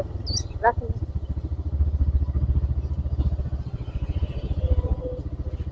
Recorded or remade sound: recorded